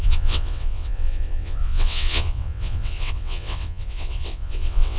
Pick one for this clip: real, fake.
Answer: fake